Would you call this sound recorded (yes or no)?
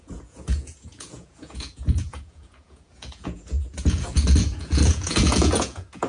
no